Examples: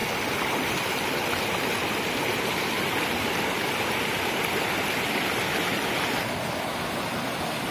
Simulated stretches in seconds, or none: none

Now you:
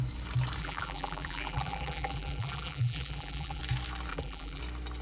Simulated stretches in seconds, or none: 0.6-3.6 (vocoder, BigVGAN v2); 4.1-4.6

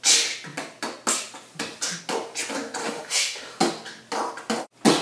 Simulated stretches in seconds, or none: 2.8-3.6 (autoencoder, DAC-VAE)

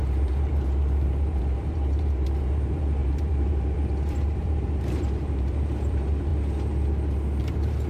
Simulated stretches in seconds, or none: 0.0-6.3 (vocoder, BigVGAN v2); 7.4-7.9

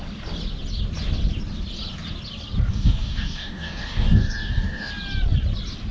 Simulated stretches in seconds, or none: 2.7-4.9 (codec, DAC)